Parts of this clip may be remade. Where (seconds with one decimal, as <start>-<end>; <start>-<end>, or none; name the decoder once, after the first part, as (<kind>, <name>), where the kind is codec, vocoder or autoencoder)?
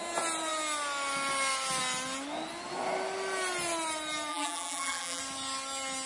4.3-5.2 (vocoder, BigVGAN v2)